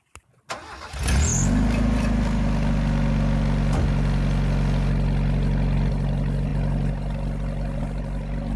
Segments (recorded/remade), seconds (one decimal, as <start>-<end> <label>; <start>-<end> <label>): 0.0-8.6 recorded